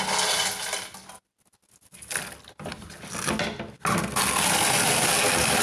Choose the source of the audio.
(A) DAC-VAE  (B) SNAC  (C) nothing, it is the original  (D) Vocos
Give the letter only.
C